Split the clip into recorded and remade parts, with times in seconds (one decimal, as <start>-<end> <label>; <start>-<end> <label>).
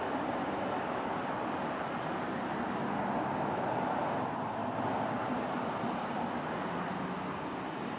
0.0-8.0 recorded